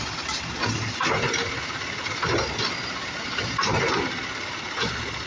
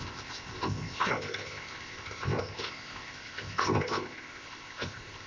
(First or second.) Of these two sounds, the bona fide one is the first